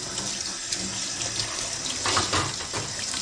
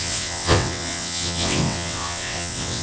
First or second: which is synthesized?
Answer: second